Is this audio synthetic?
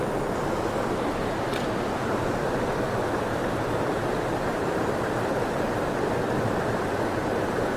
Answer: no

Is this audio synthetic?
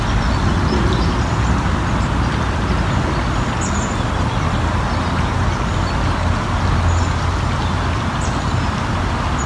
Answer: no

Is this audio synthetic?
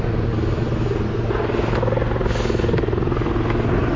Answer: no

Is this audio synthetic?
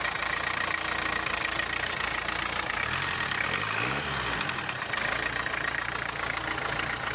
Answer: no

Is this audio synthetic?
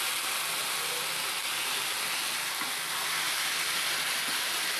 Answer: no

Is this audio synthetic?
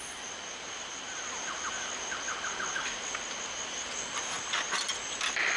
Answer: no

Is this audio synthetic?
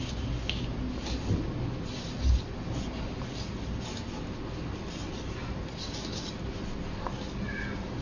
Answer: no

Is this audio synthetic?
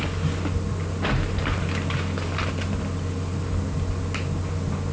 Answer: no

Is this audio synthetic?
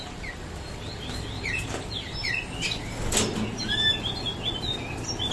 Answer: no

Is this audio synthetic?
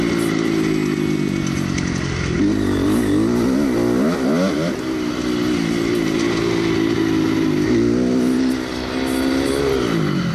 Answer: no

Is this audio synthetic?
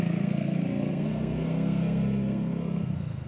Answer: yes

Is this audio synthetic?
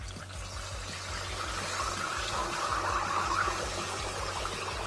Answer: no